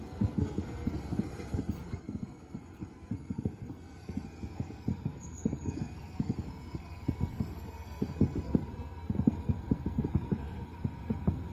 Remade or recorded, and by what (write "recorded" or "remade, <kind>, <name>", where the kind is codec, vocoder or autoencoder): remade, codec, SNAC